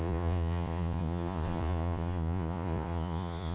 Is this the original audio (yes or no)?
no